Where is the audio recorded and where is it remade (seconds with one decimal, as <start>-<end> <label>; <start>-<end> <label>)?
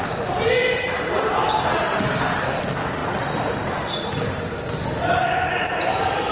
0.0-6.3 recorded